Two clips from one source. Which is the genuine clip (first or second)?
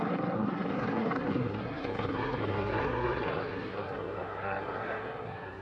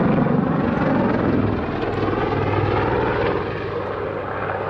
second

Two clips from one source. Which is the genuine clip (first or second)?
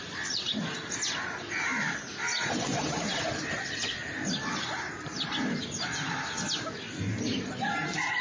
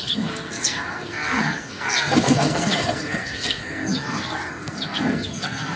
first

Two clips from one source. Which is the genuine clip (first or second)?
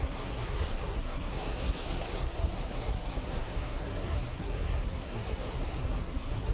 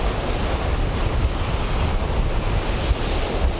second